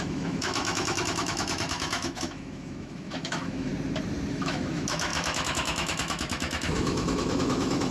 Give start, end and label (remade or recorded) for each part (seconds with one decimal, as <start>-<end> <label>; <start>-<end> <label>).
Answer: 0.0-3.7 remade; 3.7-4.3 recorded; 4.3-7.9 remade